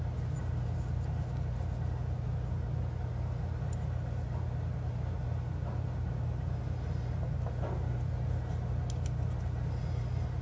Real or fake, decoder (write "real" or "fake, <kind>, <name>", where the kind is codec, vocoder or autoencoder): real